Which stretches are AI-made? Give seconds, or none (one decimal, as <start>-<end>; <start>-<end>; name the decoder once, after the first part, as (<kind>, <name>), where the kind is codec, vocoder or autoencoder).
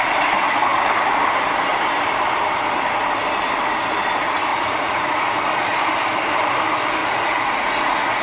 4.5-5.2 (vocoder, Vocos); 7.0-8.2